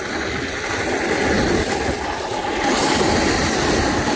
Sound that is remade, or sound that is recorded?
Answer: recorded